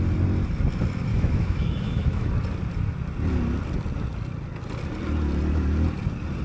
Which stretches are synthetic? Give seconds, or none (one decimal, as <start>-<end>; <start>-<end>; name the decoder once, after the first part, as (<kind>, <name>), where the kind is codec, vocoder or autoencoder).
1.1-2.3 (autoencoder, DAC-VAE)